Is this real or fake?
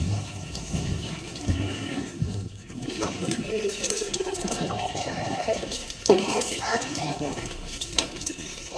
fake